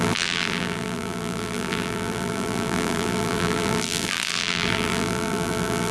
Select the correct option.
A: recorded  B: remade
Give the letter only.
B